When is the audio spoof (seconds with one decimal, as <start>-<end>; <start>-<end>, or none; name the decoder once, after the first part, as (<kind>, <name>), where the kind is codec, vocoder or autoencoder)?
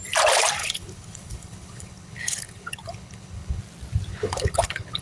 0.6-3.6 (codec, HILCodec); 4.1-5.0